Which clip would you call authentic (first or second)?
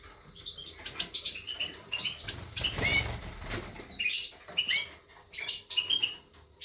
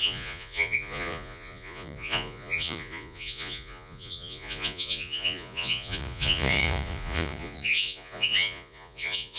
first